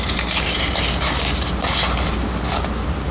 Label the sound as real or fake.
real